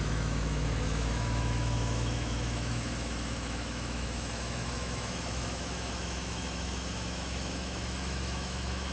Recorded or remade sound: remade